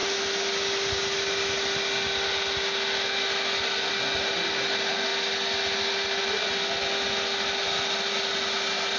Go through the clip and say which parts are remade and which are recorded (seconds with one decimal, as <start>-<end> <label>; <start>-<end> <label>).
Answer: 0.0-9.0 recorded